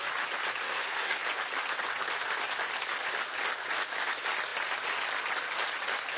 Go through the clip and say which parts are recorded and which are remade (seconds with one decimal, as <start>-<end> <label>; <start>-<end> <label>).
0.0-0.6 recorded; 0.6-1.2 remade; 1.2-6.2 recorded